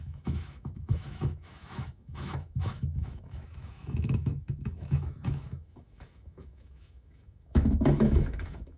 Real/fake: fake